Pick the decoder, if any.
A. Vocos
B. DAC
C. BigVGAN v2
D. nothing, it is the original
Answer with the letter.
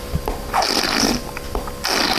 D